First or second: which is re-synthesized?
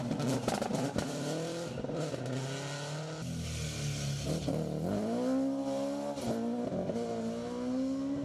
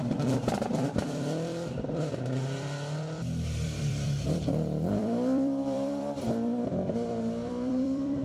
second